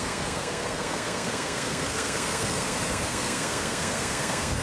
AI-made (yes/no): yes